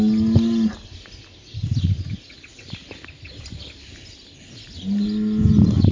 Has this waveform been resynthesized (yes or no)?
no